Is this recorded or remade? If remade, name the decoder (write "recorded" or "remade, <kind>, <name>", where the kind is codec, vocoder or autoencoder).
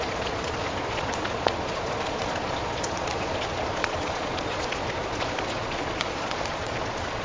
remade, vocoder, Vocos